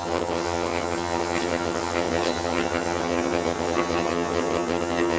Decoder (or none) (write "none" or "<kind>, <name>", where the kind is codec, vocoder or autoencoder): vocoder, HiFi-GAN